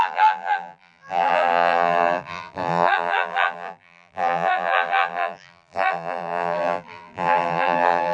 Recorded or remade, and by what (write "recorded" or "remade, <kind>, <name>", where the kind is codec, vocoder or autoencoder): remade, vocoder, BigVGAN v2